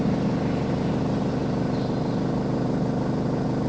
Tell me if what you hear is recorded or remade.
recorded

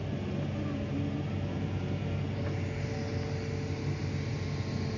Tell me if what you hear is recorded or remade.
recorded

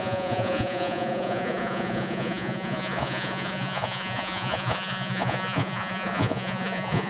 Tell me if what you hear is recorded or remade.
remade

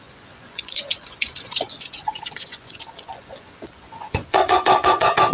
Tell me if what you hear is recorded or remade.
remade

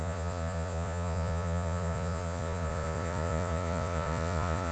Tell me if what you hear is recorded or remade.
remade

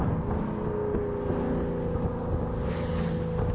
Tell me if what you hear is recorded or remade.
recorded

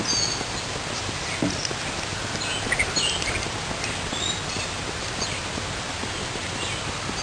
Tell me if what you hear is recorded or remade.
recorded